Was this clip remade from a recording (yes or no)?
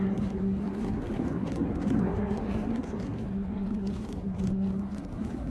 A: yes